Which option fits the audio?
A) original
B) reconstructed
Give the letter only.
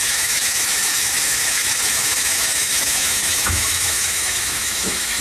B